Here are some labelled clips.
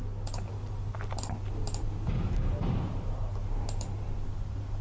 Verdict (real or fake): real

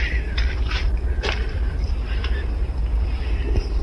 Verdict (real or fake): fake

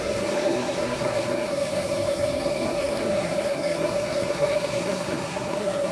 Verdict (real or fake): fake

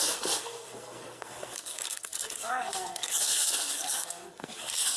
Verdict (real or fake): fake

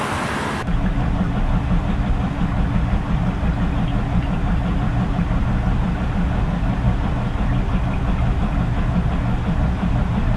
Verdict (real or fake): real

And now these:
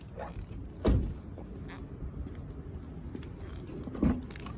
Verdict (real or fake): real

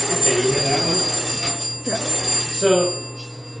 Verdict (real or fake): real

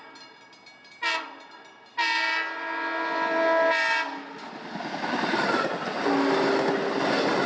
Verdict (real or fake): real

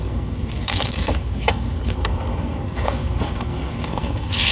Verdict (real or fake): fake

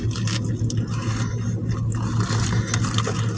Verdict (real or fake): real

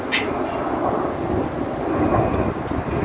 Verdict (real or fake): real